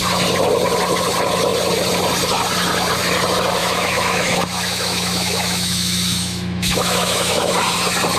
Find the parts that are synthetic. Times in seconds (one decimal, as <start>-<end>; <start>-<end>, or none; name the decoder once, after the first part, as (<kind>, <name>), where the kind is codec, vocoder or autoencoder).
3.6-7.5 (autoencoder, DAC-VAE)